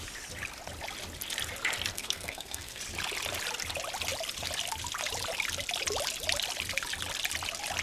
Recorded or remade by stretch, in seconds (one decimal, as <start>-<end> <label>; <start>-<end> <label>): 0.0-1.9 recorded; 1.9-2.8 remade; 2.8-7.8 recorded